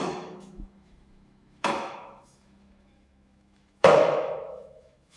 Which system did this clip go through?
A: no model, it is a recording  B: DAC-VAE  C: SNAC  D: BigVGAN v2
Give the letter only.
B